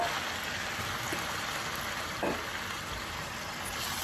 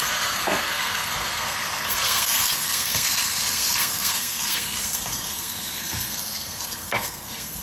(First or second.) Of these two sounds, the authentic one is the first